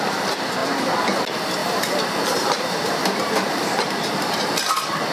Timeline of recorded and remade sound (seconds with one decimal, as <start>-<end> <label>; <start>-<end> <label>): 0.0-1.6 recorded; 1.6-4.6 remade; 4.6-5.1 recorded